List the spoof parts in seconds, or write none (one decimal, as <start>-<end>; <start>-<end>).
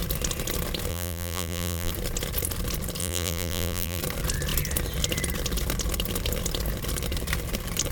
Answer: 0.9-1.9; 3.0-4.0